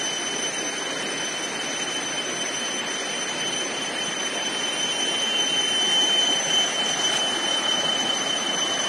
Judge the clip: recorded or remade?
recorded